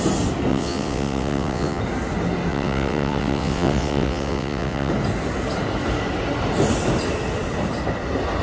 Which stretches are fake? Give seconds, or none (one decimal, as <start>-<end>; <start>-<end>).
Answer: 0.5-1.8; 2.5-4.9